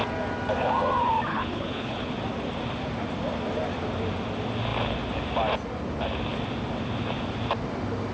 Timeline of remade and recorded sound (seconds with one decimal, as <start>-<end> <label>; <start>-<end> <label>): 0.0-1.3 recorded; 1.3-2.1 remade; 2.1-8.1 recorded